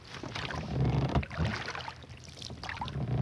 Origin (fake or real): real